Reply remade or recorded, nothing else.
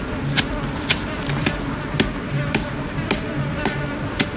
recorded